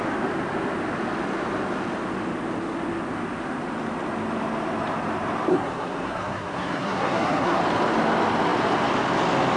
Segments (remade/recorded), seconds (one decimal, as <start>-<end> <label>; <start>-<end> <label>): 0.0-5.5 recorded; 5.5-7.6 remade; 7.6-9.6 recorded